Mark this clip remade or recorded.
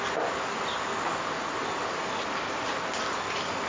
recorded